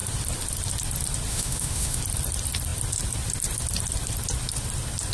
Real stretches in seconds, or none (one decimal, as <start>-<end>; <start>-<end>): 0.0-1.3; 2.0-5.1